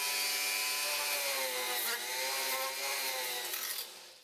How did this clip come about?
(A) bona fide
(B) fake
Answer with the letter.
A